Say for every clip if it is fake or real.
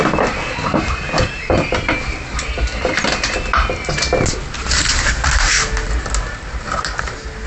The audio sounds real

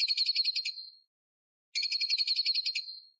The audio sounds real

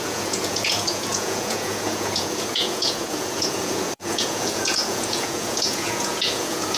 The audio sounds fake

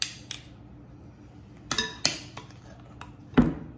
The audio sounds real